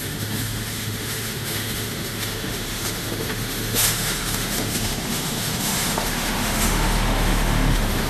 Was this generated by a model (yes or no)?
yes